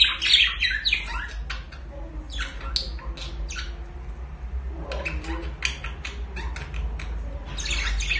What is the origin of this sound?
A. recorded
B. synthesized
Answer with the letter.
A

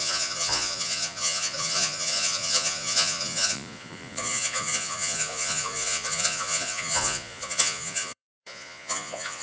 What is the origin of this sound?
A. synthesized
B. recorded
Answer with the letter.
A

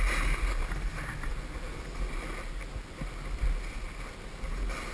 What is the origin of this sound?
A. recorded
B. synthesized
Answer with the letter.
A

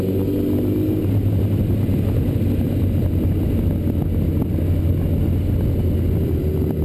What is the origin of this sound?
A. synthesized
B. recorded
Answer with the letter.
B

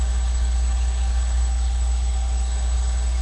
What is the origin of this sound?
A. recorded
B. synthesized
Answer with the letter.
B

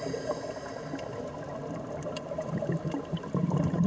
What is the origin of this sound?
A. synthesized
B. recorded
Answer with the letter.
B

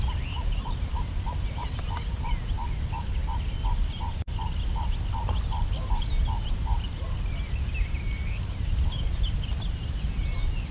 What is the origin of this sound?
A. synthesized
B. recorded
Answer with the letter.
B